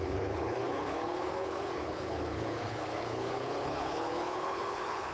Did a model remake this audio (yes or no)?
yes